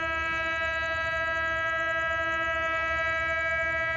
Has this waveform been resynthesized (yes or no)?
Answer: no